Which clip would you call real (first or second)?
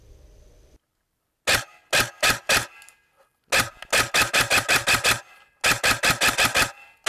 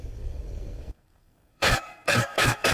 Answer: first